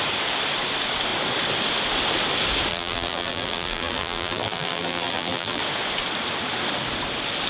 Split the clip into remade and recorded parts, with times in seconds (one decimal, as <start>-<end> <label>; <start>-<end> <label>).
0.0-2.7 recorded; 2.7-5.6 remade; 5.6-7.5 recorded